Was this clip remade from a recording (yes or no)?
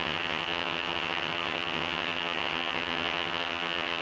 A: yes